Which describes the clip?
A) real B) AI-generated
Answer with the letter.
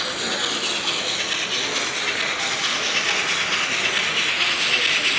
A